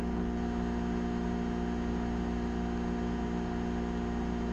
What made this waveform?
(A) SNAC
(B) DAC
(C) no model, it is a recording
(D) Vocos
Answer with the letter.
C